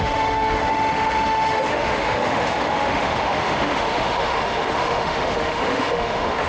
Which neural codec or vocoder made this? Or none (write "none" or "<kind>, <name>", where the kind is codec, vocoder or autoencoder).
autoencoder, DAC-VAE